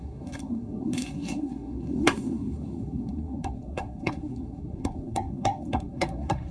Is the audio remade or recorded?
remade